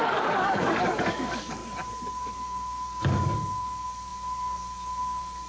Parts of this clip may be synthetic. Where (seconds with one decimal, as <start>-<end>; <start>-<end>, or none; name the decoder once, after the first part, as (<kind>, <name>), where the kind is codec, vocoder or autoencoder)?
0.0-1.6 (codec, DAC); 2.2-5.5

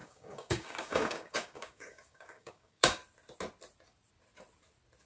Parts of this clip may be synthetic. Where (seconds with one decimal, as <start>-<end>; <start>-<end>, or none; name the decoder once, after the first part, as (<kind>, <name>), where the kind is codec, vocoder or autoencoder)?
0.0-3.0 (codec, DAC)

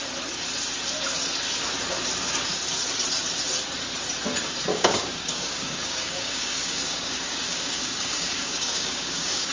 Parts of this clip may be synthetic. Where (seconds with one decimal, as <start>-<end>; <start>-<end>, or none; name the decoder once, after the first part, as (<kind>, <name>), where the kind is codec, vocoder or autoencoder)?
4.7-9.5 (codec, DAC)

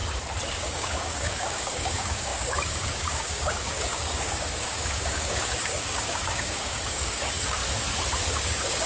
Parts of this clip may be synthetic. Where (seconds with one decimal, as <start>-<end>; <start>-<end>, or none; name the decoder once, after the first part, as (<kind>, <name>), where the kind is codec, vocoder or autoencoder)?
0.5-7.6 (codec, DAC); 8.3-8.9

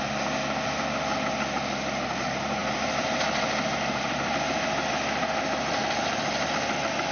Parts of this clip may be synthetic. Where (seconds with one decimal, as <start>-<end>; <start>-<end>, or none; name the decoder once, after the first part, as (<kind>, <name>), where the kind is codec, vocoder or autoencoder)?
none

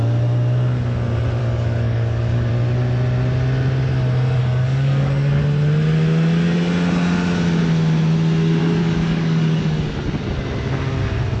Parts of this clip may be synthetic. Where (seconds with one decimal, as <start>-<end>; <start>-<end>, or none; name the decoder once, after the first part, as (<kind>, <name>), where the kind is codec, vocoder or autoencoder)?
1.4-2.5 (codec, DAC); 4.4-5.4; 8.6-9.8